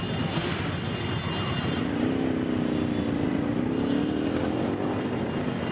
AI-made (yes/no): no